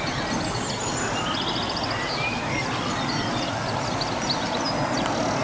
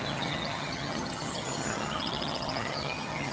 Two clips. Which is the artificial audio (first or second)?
second